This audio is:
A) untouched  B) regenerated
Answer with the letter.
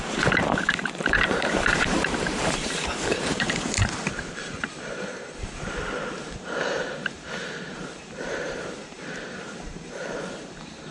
B